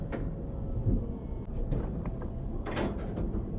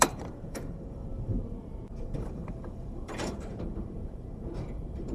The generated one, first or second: second